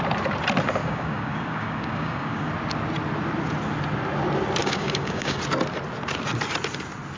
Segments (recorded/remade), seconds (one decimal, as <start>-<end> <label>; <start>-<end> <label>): 0.0-0.8 recorded; 0.8-2.5 remade; 2.5-4.6 recorded; 4.6-5.4 remade; 5.4-7.2 recorded